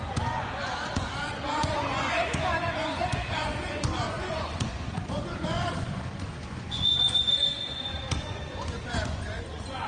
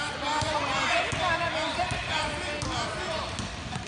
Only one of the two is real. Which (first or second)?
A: second